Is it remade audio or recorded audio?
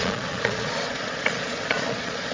remade